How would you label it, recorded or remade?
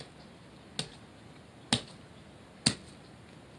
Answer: recorded